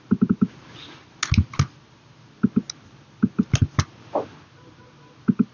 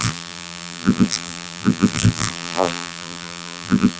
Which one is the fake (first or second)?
second